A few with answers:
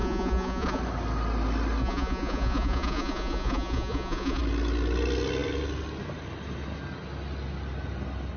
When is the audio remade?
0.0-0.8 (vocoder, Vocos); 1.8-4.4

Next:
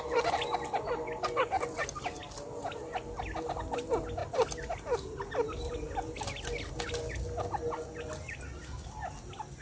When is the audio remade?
none